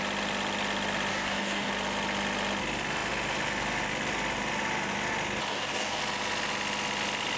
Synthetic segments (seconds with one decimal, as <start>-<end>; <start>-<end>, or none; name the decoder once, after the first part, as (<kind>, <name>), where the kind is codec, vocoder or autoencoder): 1.1-1.7 (codec, DAC); 5.5-6.0